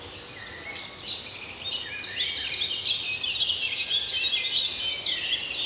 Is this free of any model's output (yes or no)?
yes